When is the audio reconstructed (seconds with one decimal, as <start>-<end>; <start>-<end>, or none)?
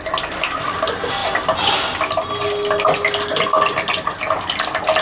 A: none